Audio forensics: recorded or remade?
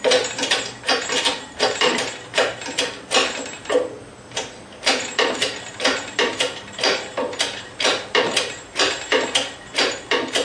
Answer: remade